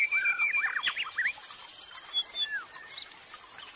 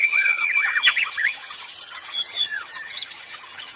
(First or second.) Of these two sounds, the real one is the first